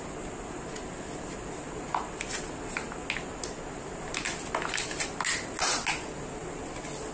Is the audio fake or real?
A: real